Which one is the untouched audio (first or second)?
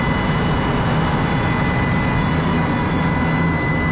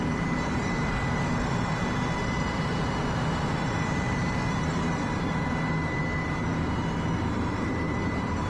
first